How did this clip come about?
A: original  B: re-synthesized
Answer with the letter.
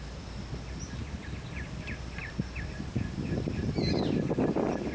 A